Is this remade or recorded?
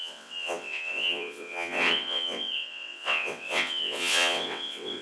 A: remade